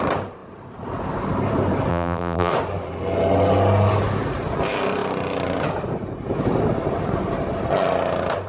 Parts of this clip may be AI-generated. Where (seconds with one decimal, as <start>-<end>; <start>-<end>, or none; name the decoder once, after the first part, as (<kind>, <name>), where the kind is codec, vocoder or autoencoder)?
1.9-2.5 (vocoder, BigVGAN v2)